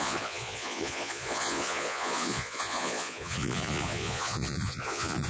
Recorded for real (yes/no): no